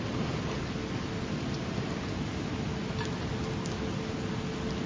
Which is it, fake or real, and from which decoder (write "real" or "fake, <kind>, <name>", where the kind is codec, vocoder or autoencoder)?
real